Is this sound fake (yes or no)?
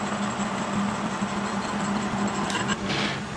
no